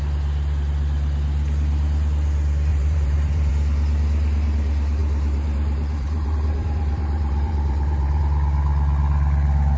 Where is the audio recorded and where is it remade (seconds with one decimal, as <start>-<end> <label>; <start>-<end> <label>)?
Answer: 0.0-2.7 recorded; 2.7-3.5 remade; 3.5-5.0 recorded; 5.0-8.2 remade; 8.2-9.8 recorded